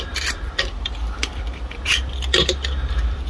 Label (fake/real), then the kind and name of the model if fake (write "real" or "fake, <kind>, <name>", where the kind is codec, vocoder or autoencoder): fake, vocoder, BigVGAN v2